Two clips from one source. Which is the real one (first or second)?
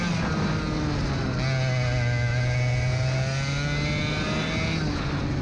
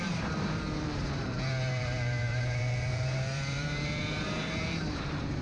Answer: first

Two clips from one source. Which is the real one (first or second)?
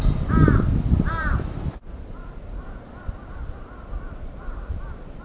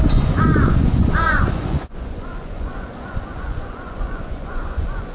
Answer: first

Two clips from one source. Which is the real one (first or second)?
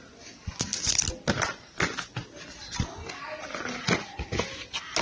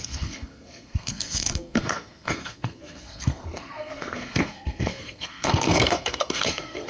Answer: first